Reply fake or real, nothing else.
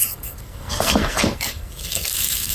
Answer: fake